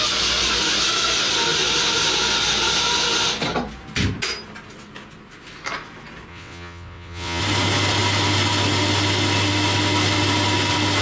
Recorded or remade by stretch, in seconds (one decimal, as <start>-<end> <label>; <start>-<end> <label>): 0.0-6.3 recorded; 6.3-7.4 remade; 7.4-11.0 recorded